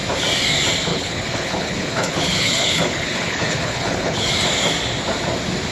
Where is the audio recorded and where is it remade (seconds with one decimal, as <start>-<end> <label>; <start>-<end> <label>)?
0.0-0.9 recorded; 0.9-4.3 remade; 4.3-5.7 recorded